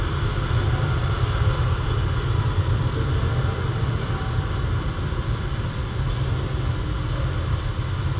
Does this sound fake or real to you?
real